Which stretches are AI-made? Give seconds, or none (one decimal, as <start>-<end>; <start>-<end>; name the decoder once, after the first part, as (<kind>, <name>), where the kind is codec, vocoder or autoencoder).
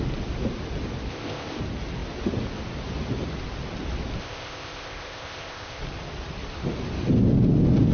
1.1-1.6 (codec, ZipCodec); 4.2-5.8